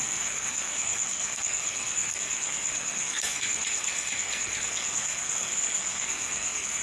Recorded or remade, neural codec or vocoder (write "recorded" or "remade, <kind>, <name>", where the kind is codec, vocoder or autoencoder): remade, codec, SNAC